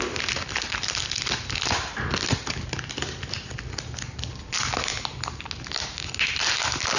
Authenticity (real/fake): real